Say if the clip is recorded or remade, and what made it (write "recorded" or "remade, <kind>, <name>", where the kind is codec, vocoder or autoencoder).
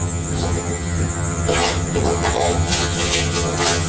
remade, vocoder, HiFi-GAN